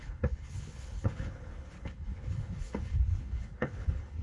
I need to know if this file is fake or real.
fake